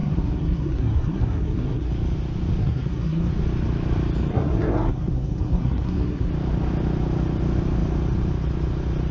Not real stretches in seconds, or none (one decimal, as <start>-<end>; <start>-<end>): 0.0-1.9; 2.6-3.3; 4.3-6.3